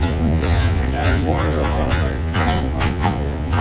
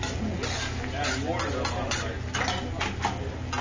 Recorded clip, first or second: second